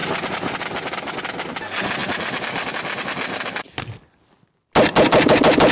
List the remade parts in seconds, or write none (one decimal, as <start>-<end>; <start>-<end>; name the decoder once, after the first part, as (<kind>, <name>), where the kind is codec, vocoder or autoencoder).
none